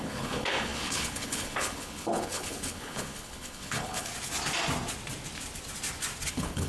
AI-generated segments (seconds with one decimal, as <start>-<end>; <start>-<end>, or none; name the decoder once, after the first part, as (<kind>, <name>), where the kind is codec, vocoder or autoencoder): 0.0-4.1 (codec, HILCodec); 6.3-6.7